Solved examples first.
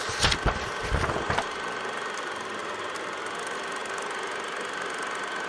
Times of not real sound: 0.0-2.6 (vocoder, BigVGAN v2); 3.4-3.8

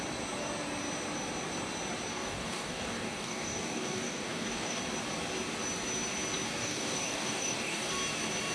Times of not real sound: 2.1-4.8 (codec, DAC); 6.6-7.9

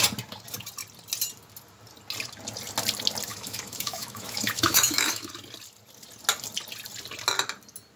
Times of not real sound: 3.3-5.3 (autoencoder, DAC-VAE)

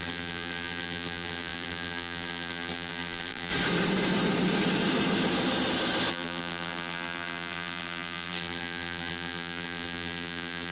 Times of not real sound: 0.0-3.5 (vocoder, BigVGAN v2); 6.1-10.7

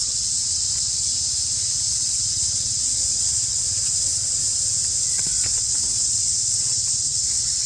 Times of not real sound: 0.0-1.1 (vocoder, WaveNeXt); 1.9-4.4; 5.1-7.7

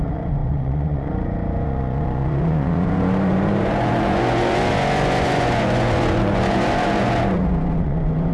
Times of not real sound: 0.0-8.3 (vocoder, Vocos)